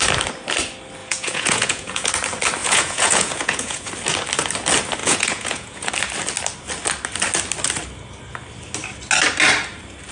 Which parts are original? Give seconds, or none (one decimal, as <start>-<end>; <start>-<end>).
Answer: 0.0-1.0; 2.1-2.6; 3.9-5.0; 5.9-10.1

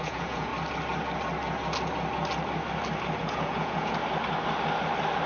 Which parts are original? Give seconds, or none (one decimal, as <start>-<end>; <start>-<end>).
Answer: 0.5-3.2; 4.0-5.3

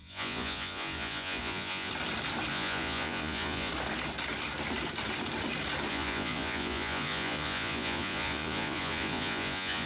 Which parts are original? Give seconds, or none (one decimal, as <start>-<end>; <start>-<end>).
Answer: 1.9-2.5; 3.7-5.9